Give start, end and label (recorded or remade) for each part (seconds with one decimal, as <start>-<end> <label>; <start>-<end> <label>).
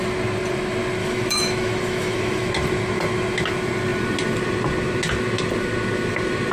0.0-1.0 recorded; 1.0-2.5 remade; 2.5-6.5 recorded